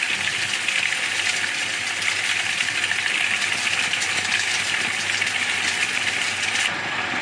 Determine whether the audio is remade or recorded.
recorded